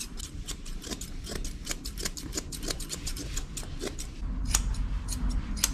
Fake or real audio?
real